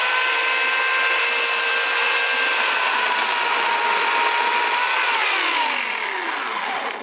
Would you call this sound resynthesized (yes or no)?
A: no